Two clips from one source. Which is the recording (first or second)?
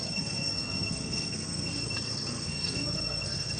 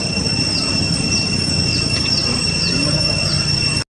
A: second